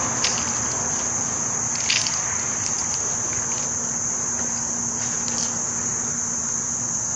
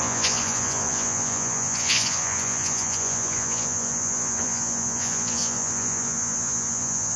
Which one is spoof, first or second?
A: second